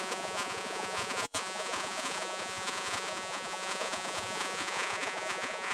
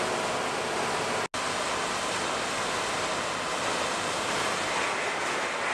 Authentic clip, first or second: second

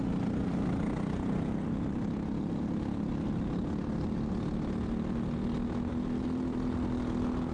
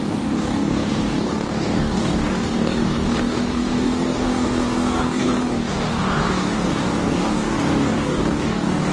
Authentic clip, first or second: first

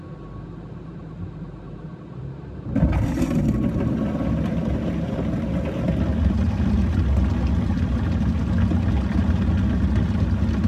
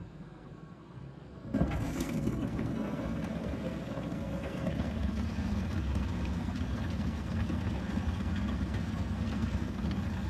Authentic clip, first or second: first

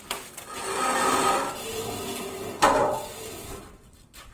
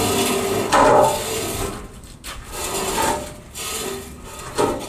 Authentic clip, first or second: second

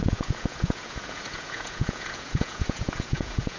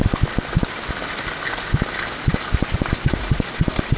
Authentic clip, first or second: second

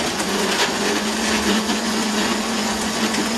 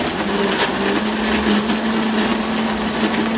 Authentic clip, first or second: second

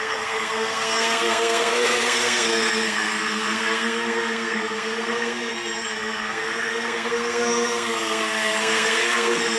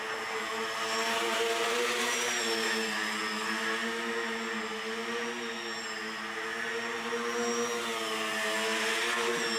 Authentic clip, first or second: second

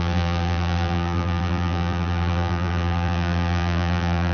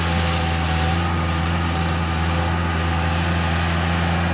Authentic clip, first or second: second